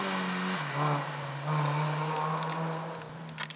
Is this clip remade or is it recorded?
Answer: recorded